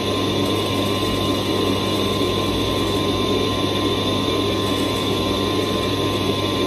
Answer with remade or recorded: recorded